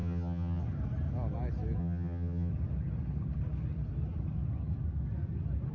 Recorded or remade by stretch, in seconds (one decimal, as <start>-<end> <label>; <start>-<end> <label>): 0.0-0.6 remade; 0.6-1.8 recorded; 1.8-2.5 remade; 2.5-5.7 recorded